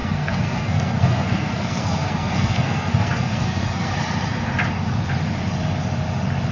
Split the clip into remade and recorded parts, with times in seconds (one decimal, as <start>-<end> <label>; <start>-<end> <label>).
0.0-3.9 remade; 3.9-6.5 recorded